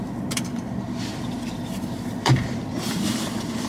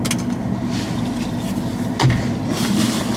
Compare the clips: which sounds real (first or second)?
second